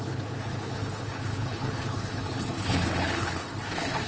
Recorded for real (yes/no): no